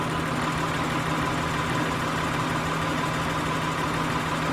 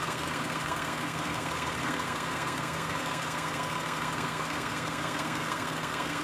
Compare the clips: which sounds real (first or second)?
first